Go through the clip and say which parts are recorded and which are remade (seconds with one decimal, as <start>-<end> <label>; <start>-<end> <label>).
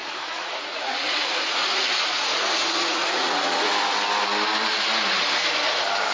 0.0-3.7 remade; 3.7-6.1 recorded